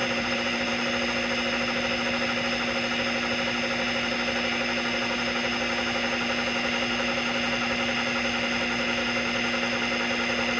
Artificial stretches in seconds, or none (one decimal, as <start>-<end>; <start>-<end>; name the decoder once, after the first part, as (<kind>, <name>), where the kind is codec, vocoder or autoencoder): 0.0-0.7 (vocoder, BigVGAN v2)